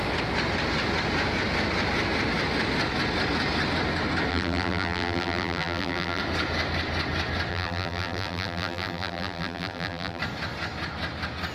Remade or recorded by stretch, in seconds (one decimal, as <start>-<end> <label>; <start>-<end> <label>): 0.0-4.3 recorded; 4.3-6.2 remade; 6.2-7.5 recorded; 7.5-10.2 remade; 10.2-11.5 recorded